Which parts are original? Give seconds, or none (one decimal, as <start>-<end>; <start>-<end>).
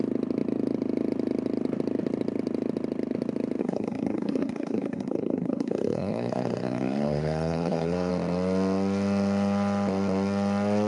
0.0-3.6; 8.1-10.9